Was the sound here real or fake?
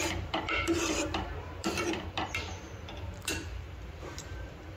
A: fake